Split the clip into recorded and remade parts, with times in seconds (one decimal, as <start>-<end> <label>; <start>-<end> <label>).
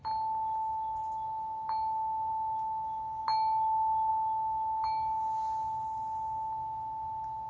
0.0-7.5 recorded